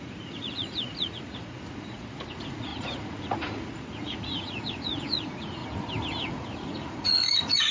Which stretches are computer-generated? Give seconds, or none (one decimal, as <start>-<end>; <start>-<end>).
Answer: 0.0-5.6; 6.2-7.7

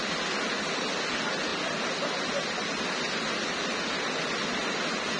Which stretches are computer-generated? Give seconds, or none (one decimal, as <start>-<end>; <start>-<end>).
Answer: none